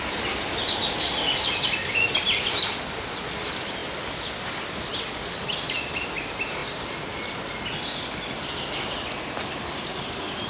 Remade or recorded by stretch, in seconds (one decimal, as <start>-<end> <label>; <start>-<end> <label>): 0.0-10.5 recorded